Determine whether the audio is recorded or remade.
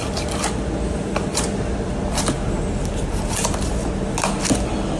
recorded